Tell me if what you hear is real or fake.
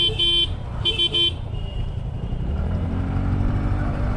fake